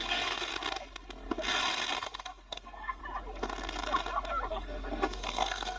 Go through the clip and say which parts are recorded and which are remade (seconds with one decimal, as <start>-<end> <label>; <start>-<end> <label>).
0.0-0.5 remade; 0.5-1.7 recorded; 1.7-3.0 remade; 3.0-4.5 recorded; 4.5-5.8 remade